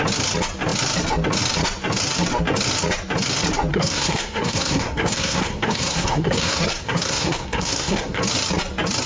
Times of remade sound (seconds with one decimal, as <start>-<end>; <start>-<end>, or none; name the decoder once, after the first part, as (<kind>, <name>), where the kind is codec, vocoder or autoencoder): 3.7-8.2 (codec, SNAC)